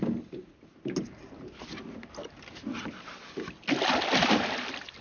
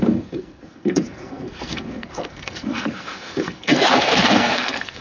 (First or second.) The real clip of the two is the first